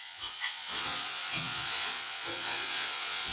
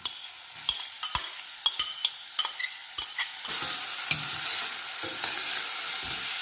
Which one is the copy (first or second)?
first